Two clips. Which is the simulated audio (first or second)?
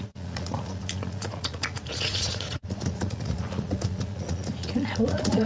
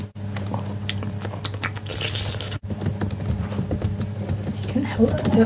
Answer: first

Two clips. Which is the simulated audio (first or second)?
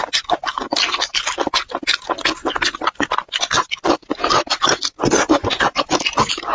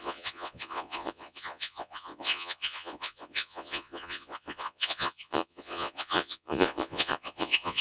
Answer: second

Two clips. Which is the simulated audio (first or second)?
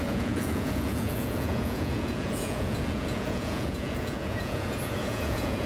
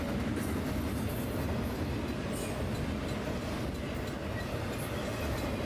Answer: first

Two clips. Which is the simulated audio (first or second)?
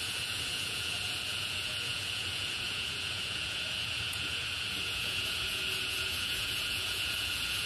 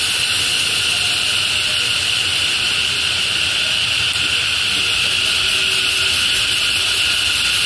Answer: first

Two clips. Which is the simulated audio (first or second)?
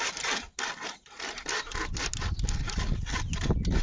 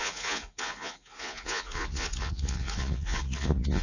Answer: second